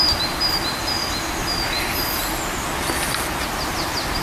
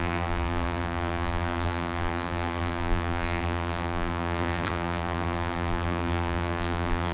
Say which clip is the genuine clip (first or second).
first